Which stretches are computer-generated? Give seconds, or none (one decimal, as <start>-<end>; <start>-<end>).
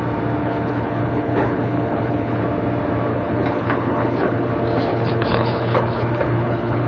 0.4-2.4; 3.1-4.5; 4.9-6.9